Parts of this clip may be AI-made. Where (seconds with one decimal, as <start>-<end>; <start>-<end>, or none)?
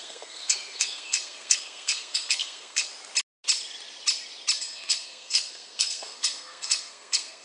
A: 0.0-2.9; 4.6-7.4